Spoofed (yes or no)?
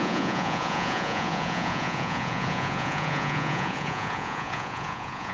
yes